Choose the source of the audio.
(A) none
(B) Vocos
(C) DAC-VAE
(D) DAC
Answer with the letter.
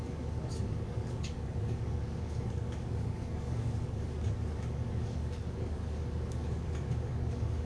D